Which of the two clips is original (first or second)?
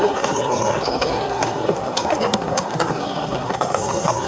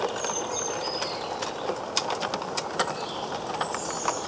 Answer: second